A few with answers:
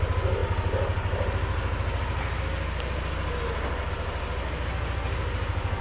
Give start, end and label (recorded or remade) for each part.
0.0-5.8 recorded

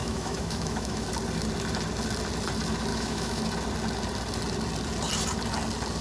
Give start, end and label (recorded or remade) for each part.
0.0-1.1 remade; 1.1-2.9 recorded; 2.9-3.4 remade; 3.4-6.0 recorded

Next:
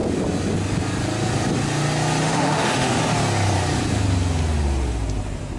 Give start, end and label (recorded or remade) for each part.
0.0-2.2 recorded; 2.2-3.0 remade; 3.0-5.6 recorded